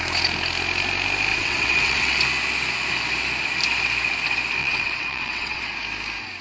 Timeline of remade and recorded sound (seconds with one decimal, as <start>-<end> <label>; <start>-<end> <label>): 0.0-1.3 recorded; 1.3-2.2 remade; 2.2-4.6 recorded; 4.6-5.6 remade; 5.6-6.4 recorded